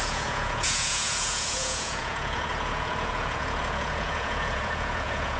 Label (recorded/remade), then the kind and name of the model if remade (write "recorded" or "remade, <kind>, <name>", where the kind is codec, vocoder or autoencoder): remade, vocoder, Vocos